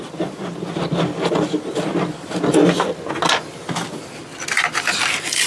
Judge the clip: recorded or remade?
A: recorded